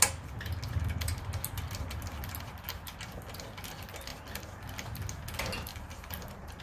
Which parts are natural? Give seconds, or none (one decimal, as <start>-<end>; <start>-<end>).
0.0-5.7